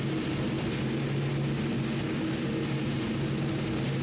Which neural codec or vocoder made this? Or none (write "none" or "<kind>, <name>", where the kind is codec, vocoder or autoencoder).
none